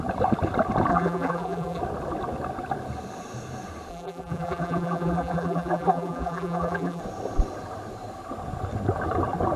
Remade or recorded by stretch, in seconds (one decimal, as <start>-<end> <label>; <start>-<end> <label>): 0.0-0.9 recorded; 0.9-1.8 remade; 1.8-3.9 recorded; 3.9-7.0 remade; 7.0-9.6 recorded